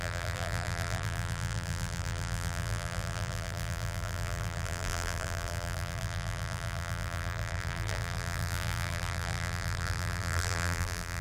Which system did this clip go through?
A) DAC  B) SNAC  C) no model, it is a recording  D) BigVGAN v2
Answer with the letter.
D